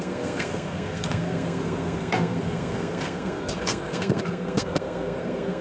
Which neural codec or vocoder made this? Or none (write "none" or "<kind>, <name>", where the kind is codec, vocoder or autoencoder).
codec, SNAC